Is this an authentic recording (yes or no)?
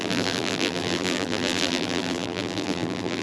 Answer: no